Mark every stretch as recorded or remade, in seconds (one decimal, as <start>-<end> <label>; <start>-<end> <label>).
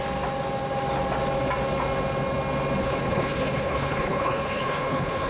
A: 0.0-2.8 recorded; 2.8-5.3 remade